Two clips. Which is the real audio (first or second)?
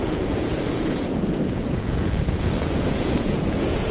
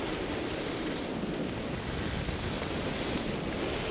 second